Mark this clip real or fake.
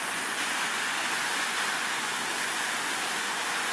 fake